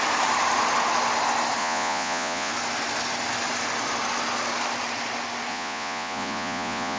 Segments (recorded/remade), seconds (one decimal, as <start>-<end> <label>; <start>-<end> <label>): 0.0-1.6 recorded; 1.6-2.5 remade; 2.5-5.5 recorded; 5.5-7.0 remade

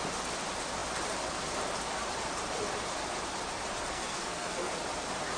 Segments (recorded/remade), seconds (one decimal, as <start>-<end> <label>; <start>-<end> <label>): 0.0-3.9 recorded; 3.9-4.7 remade; 4.7-5.4 recorded

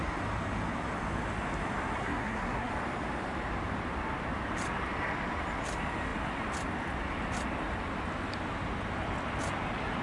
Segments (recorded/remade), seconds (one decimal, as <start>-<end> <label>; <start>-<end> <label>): 0.0-2.0 recorded; 2.0-2.7 remade; 2.7-10.0 recorded

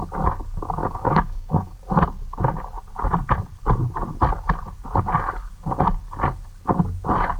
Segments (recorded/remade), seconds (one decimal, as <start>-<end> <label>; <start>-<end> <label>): 0.0-0.8 recorded; 0.8-1.8 remade; 1.8-7.4 recorded